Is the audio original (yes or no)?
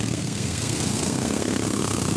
no